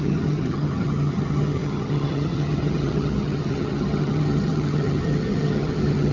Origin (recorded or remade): remade